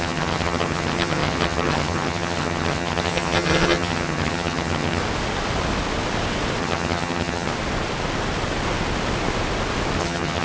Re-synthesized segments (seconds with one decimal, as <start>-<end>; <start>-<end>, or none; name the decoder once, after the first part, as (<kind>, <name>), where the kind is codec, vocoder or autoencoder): 0.0-5.0 (vocoder, HiFi-GAN); 6.6-7.5; 10.0-10.4